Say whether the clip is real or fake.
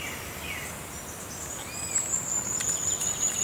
real